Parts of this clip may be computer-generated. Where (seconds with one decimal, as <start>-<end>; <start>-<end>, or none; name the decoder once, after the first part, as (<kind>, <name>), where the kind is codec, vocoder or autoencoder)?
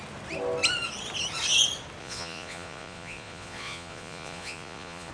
2.0-5.1 (vocoder, Vocos)